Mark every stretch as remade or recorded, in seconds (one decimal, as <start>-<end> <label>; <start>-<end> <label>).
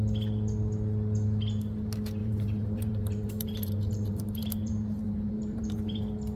0.0-2.2 recorded; 2.2-6.0 remade; 6.0-6.4 recorded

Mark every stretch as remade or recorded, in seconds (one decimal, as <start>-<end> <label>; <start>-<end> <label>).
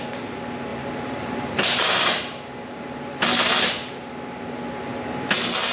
0.0-0.7 recorded; 0.7-4.1 remade; 4.1-5.7 recorded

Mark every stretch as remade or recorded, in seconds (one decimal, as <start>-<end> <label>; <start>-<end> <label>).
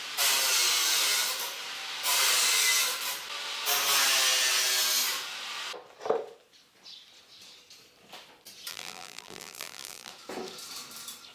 0.0-8.7 recorded; 8.7-10.1 remade; 10.1-11.3 recorded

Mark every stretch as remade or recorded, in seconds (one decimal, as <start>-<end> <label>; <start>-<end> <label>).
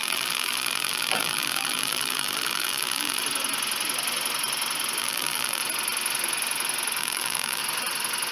0.0-3.2 remade; 3.2-5.0 recorded; 5.0-5.6 remade; 5.6-7.0 recorded; 7.0-7.6 remade; 7.6-8.3 recorded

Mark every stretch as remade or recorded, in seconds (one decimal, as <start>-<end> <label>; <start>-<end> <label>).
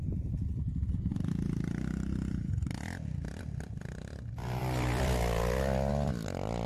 0.0-1.1 recorded; 1.1-3.4 remade; 3.4-4.6 recorded; 4.6-5.9 remade; 5.9-6.7 recorded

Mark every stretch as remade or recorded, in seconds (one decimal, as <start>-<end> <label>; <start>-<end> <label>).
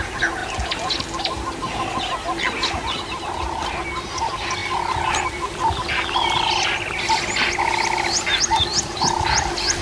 0.0-9.8 recorded